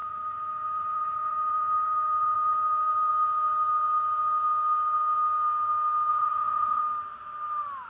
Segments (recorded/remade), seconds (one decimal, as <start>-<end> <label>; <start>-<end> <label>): 0.0-3.1 remade; 3.1-6.1 recorded; 6.1-6.8 remade; 6.8-7.9 recorded